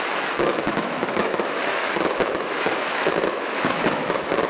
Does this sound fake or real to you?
fake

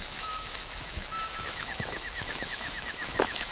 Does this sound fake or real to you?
fake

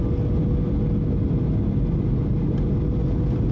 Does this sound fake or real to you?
real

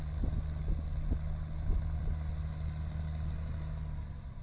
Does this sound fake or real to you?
real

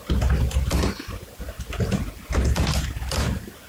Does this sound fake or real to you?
fake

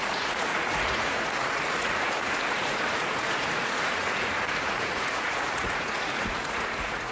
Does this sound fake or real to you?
fake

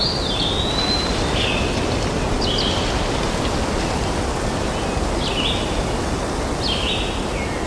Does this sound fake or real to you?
real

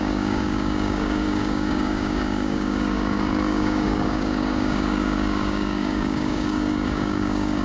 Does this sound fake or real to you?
fake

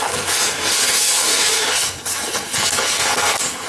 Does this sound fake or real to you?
fake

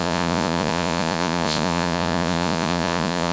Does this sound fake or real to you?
fake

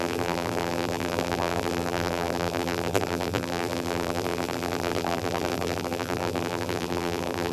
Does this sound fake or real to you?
fake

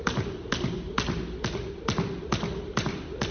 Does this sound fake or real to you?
real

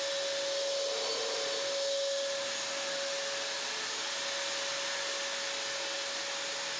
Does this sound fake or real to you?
real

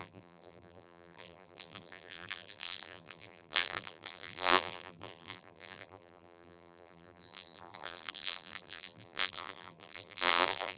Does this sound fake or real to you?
fake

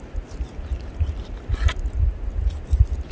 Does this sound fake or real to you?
real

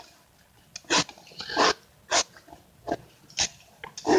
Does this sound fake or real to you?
real